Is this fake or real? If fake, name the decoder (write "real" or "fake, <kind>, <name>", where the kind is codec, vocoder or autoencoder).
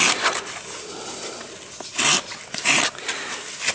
real